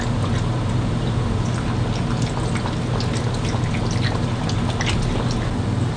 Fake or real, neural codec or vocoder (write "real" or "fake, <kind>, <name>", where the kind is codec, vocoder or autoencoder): real